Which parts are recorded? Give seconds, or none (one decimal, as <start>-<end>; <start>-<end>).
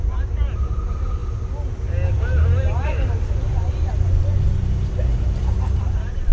0.0-6.3